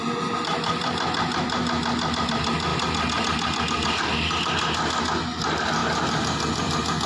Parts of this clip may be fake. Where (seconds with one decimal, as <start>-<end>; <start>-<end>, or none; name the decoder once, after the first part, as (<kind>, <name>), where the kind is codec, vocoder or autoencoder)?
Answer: none